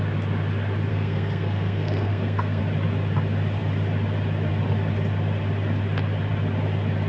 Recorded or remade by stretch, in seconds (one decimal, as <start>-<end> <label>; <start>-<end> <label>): 0.0-0.9 recorded; 0.9-2.6 remade; 2.6-7.1 recorded